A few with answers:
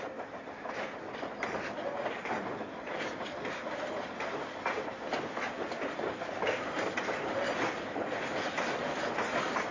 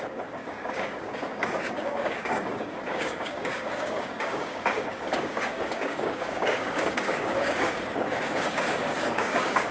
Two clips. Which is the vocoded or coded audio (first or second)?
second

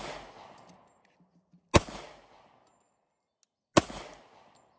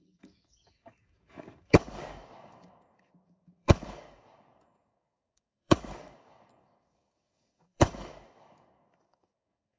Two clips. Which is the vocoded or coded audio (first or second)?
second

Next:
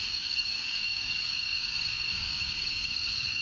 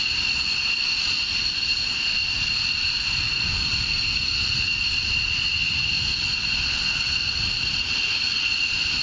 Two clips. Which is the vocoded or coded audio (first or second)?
first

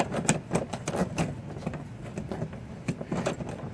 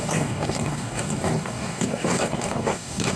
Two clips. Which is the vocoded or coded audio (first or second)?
second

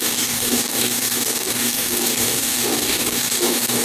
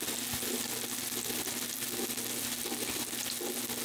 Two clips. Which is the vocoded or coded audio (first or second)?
first